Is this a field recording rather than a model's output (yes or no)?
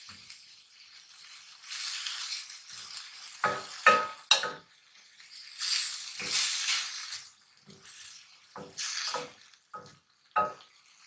yes